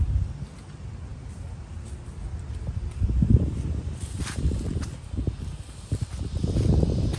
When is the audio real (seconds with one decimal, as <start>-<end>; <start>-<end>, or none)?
0.0-7.2